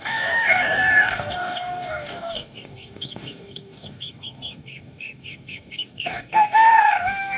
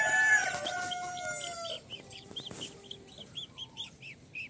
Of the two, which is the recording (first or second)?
second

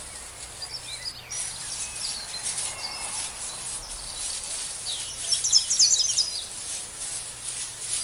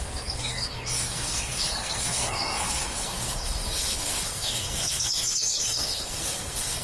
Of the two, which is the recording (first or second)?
first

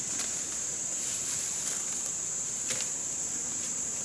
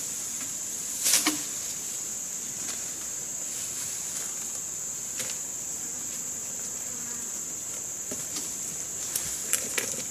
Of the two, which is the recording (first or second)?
second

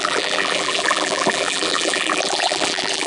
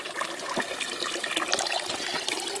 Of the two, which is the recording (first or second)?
second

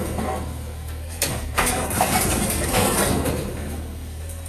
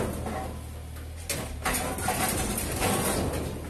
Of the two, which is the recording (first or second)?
second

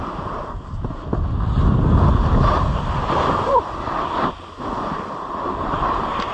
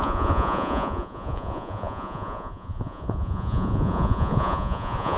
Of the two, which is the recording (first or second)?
first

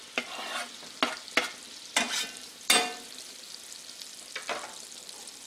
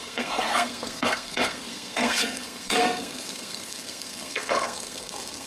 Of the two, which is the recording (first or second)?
first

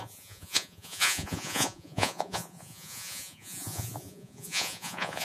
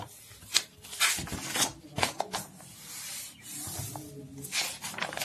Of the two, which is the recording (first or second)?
second